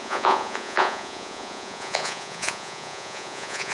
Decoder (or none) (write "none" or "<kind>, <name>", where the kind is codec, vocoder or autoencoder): vocoder, Vocos